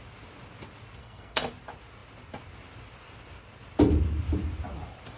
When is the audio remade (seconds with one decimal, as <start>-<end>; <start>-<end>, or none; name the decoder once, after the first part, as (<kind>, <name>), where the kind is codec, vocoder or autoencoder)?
1.0-1.5 (codec, SNAC)